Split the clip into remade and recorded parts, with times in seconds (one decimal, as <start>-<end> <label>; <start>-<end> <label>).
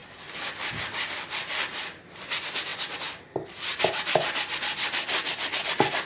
0.0-6.1 recorded